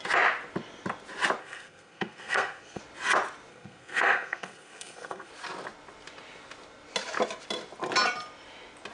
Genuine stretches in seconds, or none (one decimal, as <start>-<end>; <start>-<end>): 0.0-1.4; 2.8-3.5; 5.3-8.9